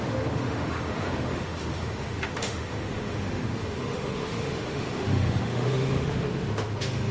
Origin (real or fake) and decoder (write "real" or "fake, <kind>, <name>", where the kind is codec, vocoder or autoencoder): fake, autoencoder, DAC-VAE